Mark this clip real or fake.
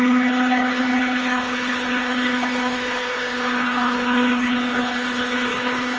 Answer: fake